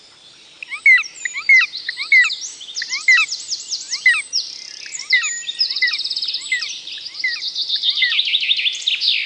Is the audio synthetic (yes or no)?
no